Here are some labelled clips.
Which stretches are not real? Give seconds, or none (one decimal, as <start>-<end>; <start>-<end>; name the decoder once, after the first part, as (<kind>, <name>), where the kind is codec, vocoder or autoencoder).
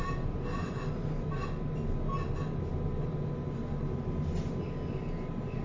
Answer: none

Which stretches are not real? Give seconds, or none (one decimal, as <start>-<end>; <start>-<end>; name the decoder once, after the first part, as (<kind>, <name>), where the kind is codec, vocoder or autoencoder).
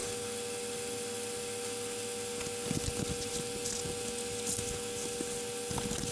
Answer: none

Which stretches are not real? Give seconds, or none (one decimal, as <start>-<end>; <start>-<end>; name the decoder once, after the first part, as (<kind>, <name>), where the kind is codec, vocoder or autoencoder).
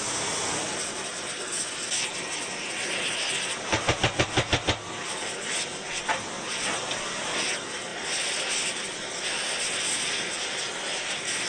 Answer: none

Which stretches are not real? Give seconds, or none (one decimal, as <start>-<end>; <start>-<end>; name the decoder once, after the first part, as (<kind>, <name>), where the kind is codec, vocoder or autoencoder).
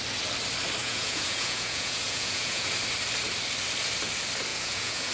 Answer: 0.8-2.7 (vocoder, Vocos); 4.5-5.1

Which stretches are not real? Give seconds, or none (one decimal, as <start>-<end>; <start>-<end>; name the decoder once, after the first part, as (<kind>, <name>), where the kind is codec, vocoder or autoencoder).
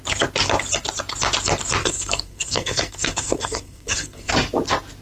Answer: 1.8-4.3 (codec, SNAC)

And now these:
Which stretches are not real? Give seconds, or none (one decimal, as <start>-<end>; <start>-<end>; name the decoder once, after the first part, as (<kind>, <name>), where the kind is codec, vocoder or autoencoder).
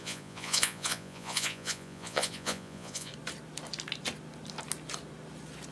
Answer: 0.0-3.1 (vocoder, Vocos)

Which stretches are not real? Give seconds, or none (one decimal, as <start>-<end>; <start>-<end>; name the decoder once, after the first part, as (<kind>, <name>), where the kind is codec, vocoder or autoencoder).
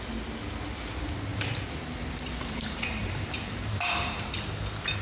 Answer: 1.3-4.3 (vocoder, BigVGAN v2)